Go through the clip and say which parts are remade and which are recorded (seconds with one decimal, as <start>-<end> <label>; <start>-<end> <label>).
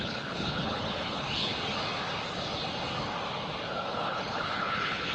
0.0-1.5 remade; 1.5-3.9 recorded; 3.9-5.1 remade